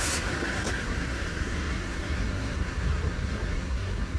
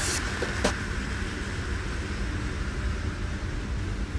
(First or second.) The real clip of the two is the second